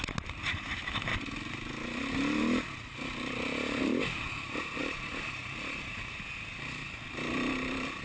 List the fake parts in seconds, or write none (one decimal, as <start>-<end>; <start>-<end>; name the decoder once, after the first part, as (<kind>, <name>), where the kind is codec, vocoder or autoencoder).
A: 4.8-5.8 (vocoder, BigVGAN v2)